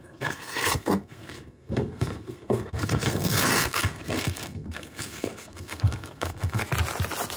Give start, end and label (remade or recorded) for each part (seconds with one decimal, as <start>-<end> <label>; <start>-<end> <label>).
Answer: 0.0-6.6 remade; 6.6-7.4 recorded

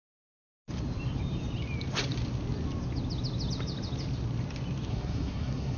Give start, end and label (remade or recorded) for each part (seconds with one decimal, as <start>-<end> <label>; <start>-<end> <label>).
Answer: 0.0-4.9 recorded; 4.9-5.8 remade

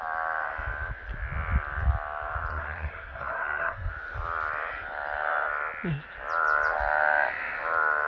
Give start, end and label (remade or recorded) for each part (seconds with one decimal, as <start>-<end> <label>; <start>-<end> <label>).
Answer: 0.0-2.5 recorded; 2.5-3.9 remade; 3.9-8.1 recorded

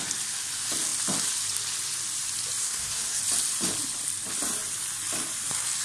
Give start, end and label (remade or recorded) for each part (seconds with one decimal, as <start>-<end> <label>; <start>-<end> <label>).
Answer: 0.0-2.6 recorded; 2.6-3.2 remade; 3.2-5.8 recorded

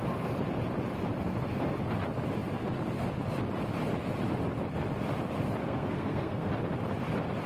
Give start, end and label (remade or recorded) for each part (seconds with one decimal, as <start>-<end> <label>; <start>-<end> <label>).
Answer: 0.0-5.6 recorded; 5.6-6.5 remade; 6.5-7.5 recorded

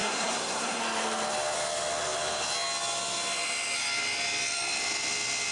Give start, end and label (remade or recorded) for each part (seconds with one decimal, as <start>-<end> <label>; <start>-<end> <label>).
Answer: 0.0-0.8 remade; 0.8-5.5 recorded

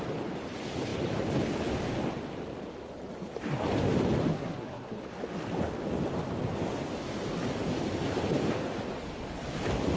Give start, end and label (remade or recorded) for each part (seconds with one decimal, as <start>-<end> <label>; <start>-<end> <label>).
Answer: 0.0-4.3 recorded; 4.3-5.0 remade; 5.0-10.0 recorded

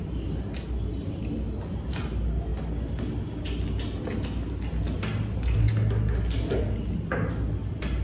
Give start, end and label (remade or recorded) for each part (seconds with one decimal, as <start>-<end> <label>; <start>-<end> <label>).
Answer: 0.0-8.0 recorded